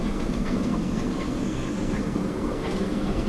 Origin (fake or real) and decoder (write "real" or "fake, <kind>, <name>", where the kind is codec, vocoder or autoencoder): fake, codec, SNAC